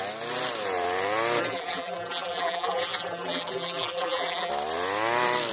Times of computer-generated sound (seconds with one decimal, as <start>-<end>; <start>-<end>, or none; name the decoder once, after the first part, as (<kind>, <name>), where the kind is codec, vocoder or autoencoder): 1.4-4.5 (vocoder, BigVGAN v2)